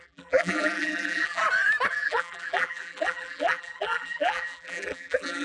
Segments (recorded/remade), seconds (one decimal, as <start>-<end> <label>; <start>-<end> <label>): 0.0-1.4 remade; 1.4-1.9 recorded; 1.9-5.4 remade